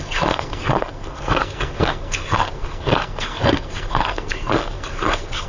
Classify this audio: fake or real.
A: fake